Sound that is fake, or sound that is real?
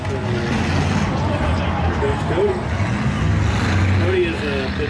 real